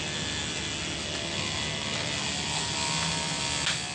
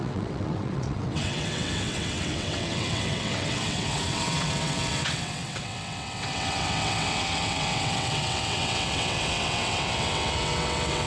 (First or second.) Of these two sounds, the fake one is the second